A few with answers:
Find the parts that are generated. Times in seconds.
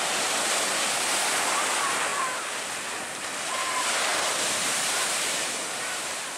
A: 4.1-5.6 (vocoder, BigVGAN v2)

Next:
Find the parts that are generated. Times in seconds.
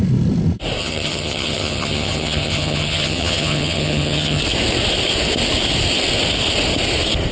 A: 0.8-4.4 (vocoder, HiFi-GAN)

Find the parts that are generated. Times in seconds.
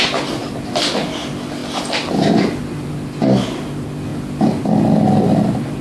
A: none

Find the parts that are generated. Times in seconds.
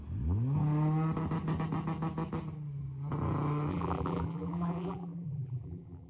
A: 3.7-6.1 (vocoder, BigVGAN v2)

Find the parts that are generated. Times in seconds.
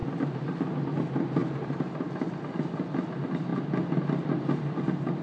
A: none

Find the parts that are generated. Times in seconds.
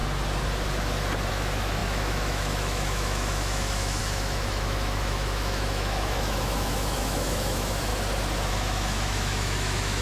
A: 1.3-7.9 (autoencoder, DAC-VAE); 8.5-10.0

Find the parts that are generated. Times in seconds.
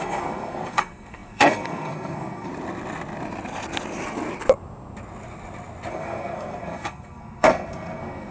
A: 0.0-2.5 (codec, SNAC); 5.9-8.3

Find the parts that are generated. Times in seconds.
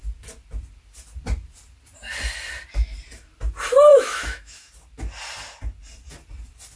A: 3.9-4.7 (autoencoder, DAC-VAE)